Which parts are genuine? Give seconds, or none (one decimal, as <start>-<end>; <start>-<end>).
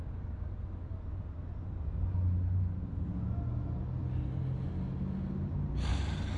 0.0-6.4